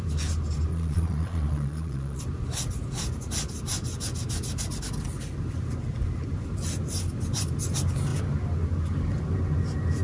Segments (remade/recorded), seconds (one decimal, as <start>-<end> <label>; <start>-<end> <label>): 0.0-0.7 recorded; 0.7-2.2 remade; 2.2-10.0 recorded